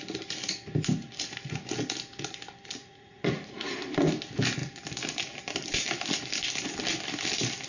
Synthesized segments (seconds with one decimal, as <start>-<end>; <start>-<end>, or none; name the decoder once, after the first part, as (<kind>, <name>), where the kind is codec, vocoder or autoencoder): 2.8-3.7 (vocoder, Vocos)